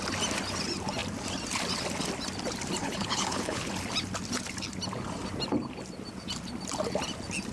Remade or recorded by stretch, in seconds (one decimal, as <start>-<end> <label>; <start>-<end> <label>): 0.0-2.8 recorded; 2.8-3.7 remade; 3.7-7.5 recorded